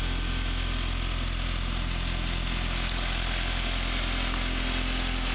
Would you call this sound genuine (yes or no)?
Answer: yes